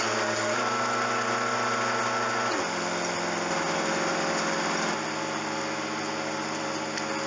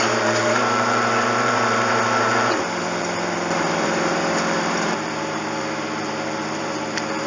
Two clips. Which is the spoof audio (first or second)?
second